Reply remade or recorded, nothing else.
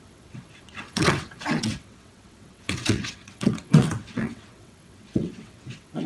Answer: remade